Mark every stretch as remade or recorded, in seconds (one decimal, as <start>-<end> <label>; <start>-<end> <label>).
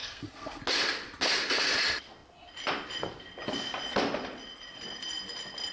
0.0-0.6 remade; 0.6-5.7 recorded